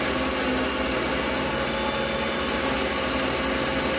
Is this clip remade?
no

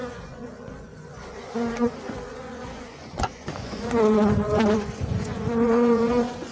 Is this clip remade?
yes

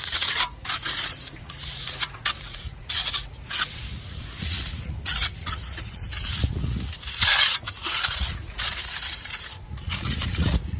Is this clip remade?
yes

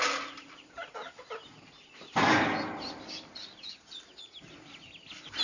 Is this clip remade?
no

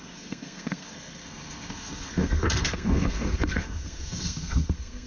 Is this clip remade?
yes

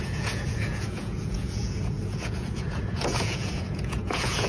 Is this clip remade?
yes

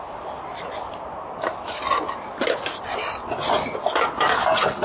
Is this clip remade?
no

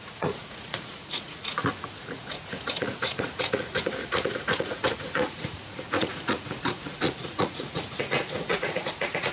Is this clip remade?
yes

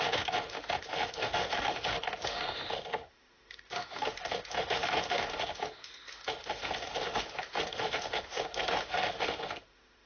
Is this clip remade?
yes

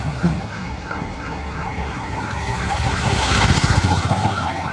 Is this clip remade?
yes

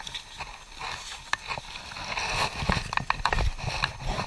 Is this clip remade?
no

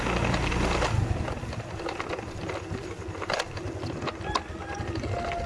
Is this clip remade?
no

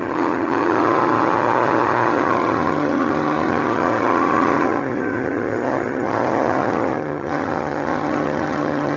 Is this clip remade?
yes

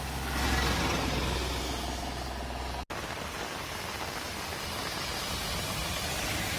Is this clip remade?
no